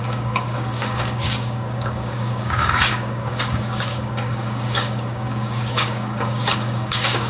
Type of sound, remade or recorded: remade